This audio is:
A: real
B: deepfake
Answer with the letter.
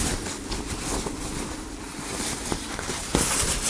A